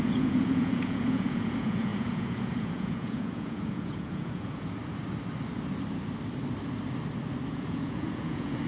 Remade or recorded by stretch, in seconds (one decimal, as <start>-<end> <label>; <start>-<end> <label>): 0.0-4.8 remade; 4.8-7.5 recorded; 7.5-8.7 remade